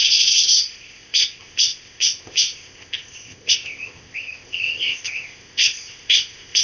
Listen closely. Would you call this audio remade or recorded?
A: remade